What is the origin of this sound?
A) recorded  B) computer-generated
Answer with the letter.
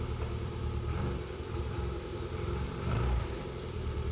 B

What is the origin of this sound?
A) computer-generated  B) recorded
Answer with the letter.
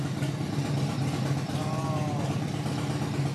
B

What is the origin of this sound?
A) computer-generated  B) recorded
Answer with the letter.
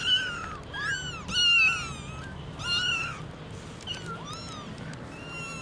B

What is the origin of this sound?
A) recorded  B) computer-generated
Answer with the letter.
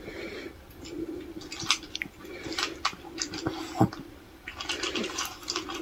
A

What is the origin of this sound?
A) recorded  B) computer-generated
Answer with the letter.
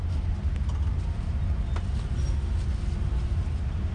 A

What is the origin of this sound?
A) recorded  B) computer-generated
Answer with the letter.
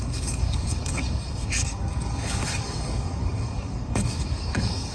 B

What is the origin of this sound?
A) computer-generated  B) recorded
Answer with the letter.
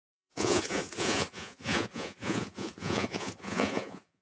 A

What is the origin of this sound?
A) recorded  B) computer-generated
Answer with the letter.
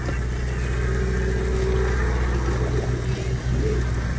A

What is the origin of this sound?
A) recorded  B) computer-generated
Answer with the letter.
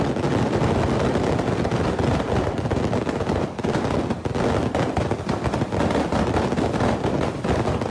A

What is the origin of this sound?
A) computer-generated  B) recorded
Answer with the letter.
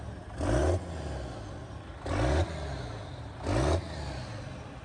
B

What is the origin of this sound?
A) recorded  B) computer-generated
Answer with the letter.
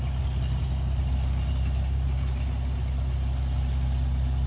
A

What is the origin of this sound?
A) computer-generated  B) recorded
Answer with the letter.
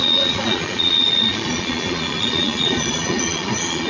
A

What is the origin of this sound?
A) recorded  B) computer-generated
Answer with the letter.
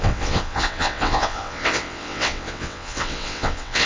B